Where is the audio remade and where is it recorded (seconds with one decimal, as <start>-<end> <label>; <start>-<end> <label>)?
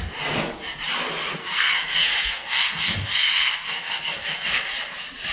0.0-1.4 recorded; 1.4-4.6 remade; 4.6-5.3 recorded